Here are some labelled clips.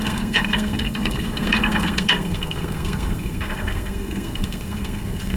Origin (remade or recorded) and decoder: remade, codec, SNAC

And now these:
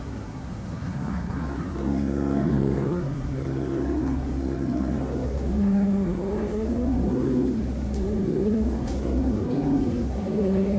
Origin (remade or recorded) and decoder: remade, codec, SNAC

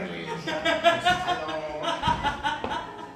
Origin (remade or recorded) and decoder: recorded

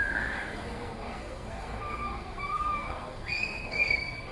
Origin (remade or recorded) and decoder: remade, codec, SNAC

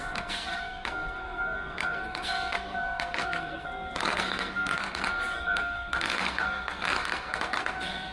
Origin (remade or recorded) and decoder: remade, codec, SNAC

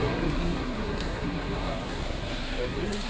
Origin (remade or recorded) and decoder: remade, codec, SNAC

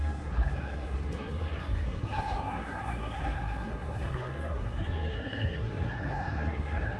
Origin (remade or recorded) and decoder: remade, codec, SNAC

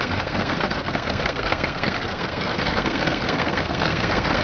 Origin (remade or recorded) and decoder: remade, codec, SNAC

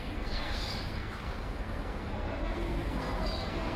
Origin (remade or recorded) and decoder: remade, codec, SNAC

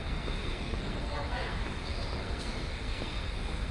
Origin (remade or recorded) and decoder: remade, codec, SNAC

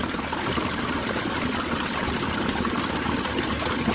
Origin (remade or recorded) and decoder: recorded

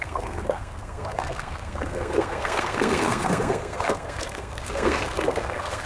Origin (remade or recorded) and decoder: remade, codec, SNAC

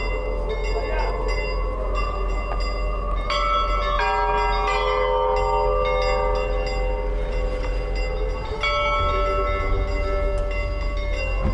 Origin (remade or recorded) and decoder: recorded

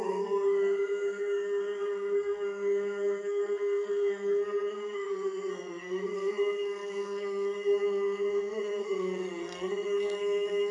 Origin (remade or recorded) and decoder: remade, codec, SNAC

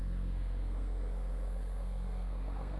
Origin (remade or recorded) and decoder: remade, codec, SNAC